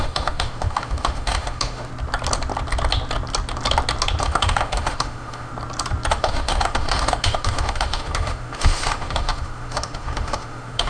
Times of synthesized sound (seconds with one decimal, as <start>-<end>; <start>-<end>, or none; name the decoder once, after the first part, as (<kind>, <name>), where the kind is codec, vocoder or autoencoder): 0.0-1.9 (autoencoder, DAC-VAE); 4.2-5.5; 6.1-10.9